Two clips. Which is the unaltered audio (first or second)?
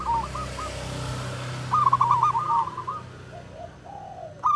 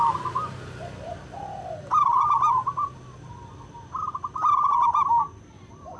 first